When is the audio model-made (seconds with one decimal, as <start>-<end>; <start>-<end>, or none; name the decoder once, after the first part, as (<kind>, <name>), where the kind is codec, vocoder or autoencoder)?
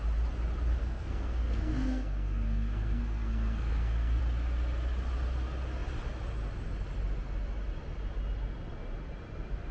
0.8-4.2 (codec, SNAC)